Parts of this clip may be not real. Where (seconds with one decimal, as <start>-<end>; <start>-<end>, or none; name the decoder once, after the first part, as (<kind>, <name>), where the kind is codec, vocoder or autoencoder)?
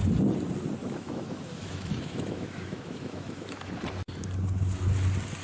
0.8-3.7 (autoencoder, DAC-VAE)